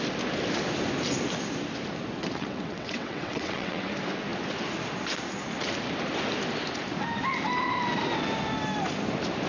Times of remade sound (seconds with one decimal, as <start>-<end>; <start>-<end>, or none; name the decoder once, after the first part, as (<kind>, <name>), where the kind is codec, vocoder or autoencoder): 2.2-3.9 (vocoder, WaveNeXt)